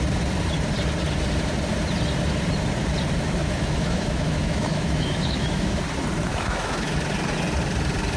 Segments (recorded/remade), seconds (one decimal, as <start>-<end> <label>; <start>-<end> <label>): 0.0-3.4 recorded; 3.4-5.8 remade; 5.8-6.3 recorded; 6.3-7.0 remade; 7.0-8.2 recorded